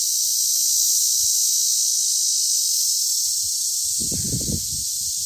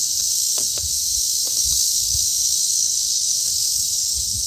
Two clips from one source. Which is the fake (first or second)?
second